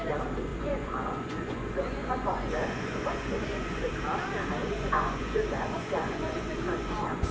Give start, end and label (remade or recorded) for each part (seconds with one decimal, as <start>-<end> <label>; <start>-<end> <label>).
0.0-0.5 recorded; 0.5-3.9 remade; 3.9-4.6 recorded; 4.6-7.3 remade